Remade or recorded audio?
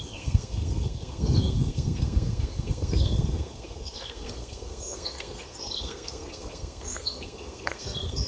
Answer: remade